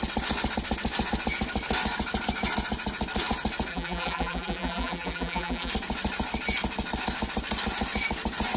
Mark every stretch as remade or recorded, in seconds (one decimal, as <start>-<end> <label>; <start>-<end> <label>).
0.0-3.7 recorded; 3.7-5.7 remade; 5.7-8.6 recorded